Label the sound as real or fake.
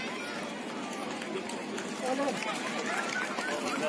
real